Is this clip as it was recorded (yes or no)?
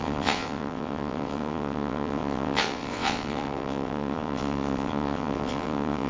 no